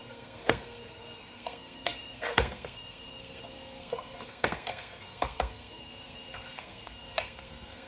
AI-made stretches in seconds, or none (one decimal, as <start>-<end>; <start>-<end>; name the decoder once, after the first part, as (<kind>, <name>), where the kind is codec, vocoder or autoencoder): 0.0-7.9 (codec, SNAC)